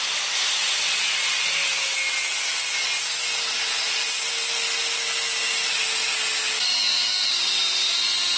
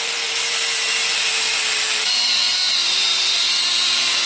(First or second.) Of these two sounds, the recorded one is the first